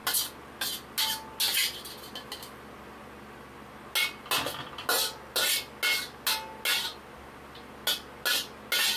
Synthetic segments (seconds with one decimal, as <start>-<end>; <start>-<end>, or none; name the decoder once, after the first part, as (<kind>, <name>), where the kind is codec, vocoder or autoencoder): none